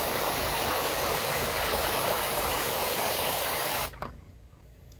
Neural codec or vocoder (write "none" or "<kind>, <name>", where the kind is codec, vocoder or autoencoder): codec, DAC